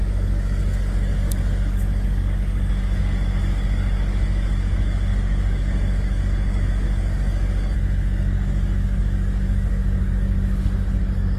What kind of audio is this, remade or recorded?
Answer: remade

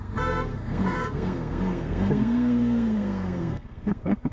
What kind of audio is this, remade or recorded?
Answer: remade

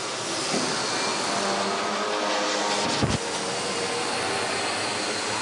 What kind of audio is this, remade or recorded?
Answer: recorded